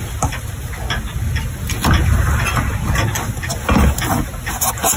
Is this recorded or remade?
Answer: recorded